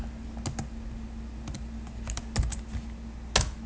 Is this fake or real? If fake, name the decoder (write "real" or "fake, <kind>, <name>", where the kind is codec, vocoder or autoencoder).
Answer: real